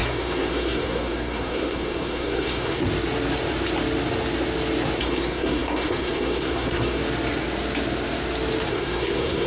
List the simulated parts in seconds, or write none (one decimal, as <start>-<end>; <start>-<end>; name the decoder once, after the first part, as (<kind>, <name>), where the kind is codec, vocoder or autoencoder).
0.0-2.8 (codec, SNAC); 5.0-7.0; 8.7-9.5